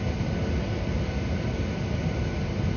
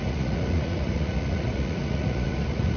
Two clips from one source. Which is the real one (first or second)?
first